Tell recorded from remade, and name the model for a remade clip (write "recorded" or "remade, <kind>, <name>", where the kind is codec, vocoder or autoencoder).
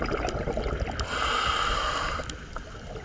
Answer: recorded